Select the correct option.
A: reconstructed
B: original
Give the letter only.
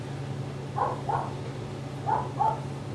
B